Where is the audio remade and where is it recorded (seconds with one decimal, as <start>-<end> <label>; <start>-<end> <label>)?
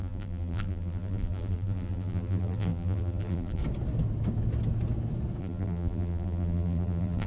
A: 0.0-3.6 remade; 3.6-5.4 recorded; 5.4-7.3 remade